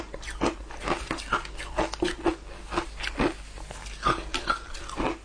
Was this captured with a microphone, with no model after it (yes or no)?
yes